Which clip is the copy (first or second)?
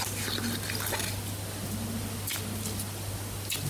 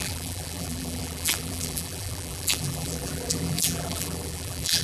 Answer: second